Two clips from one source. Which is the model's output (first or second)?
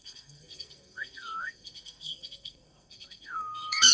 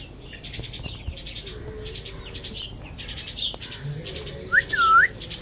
first